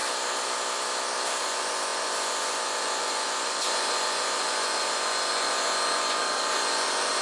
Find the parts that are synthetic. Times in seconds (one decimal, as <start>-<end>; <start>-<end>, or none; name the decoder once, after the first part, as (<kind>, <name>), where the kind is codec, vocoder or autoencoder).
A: 1.4-7.2 (vocoder, Vocos)